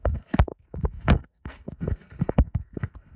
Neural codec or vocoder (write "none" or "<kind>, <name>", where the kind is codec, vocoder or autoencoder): codec, SNAC